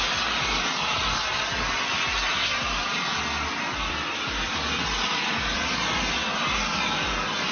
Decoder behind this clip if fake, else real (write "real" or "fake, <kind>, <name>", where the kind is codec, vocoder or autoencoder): real